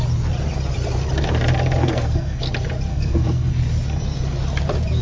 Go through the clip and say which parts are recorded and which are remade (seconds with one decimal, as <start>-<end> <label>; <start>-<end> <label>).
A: 0.0-1.8 recorded; 1.8-2.4 remade; 2.4-2.9 recorded; 2.9-3.5 remade; 3.5-5.0 recorded